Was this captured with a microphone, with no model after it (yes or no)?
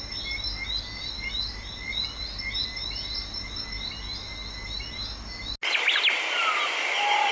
yes